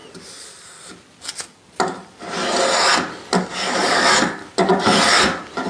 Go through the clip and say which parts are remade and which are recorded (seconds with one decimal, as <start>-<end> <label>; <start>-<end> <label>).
0.0-3.4 recorded; 3.4-4.4 remade; 4.4-5.7 recorded